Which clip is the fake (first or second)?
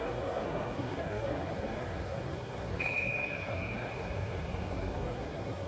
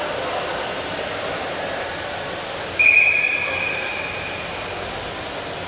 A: first